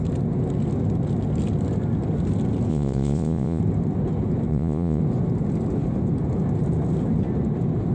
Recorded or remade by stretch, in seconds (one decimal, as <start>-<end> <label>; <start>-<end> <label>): 0.0-2.7 recorded; 2.7-3.6 remade; 3.6-4.5 recorded; 4.5-5.0 remade; 5.0-7.9 recorded